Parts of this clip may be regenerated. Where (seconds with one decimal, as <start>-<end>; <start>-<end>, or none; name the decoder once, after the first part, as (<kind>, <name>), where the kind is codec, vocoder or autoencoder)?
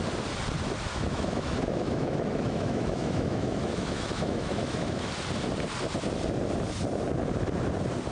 0.9-5.1 (autoencoder, DAC-VAE)